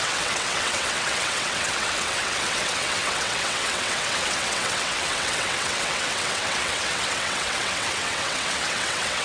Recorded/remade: remade